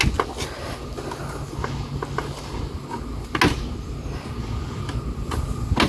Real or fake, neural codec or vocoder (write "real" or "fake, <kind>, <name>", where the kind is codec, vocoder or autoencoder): real